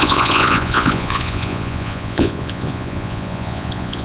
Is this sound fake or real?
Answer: fake